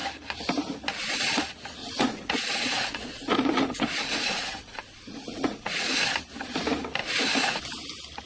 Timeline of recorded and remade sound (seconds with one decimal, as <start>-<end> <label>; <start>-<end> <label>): 0.0-1.8 recorded; 1.8-6.1 remade; 6.1-7.0 recorded; 7.0-7.6 remade; 7.6-8.3 recorded